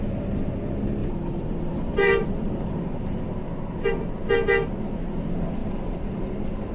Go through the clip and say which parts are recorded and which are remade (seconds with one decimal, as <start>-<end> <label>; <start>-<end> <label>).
0.0-1.0 recorded; 1.0-3.0 remade; 3.0-5.6 recorded; 5.6-6.2 remade; 6.2-6.7 recorded